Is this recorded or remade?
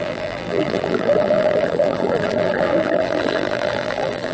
remade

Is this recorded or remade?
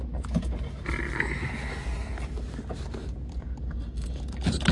recorded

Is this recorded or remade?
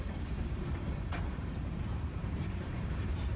remade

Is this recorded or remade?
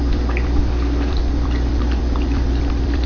remade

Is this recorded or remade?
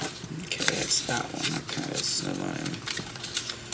remade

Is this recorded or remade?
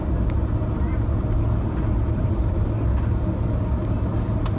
recorded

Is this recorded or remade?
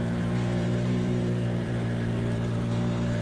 remade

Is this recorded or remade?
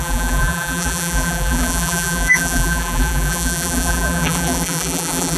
remade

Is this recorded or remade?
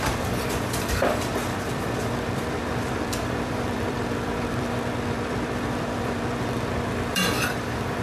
remade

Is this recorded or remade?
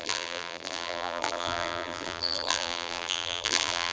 remade